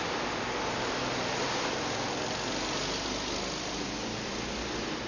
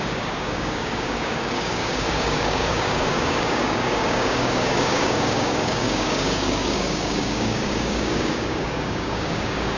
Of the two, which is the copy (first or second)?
second